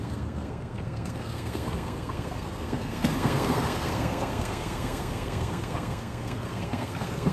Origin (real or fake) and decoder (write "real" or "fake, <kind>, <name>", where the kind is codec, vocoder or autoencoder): fake, codec, SNAC